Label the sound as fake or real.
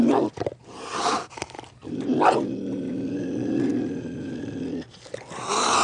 real